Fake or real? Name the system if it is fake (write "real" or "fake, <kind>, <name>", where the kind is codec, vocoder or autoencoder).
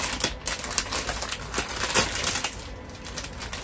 real